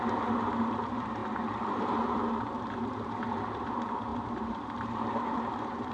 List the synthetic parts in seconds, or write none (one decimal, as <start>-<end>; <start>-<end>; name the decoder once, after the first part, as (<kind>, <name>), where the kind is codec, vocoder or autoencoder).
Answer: 0.0-5.9 (vocoder, BigVGAN v2)

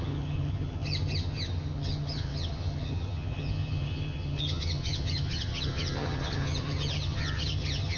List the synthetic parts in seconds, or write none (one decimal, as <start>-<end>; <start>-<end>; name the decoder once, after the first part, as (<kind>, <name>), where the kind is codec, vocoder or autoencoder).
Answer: 0.0-8.0 (vocoder, HiFi-GAN)

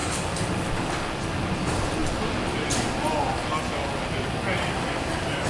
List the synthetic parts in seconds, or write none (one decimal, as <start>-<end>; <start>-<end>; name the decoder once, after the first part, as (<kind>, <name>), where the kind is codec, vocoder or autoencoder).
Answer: none

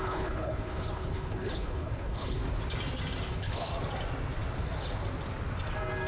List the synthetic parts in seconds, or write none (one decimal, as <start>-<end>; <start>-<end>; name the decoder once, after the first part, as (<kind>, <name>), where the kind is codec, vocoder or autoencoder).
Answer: 0.0-2.4 (codec, HILCodec); 3.3-3.7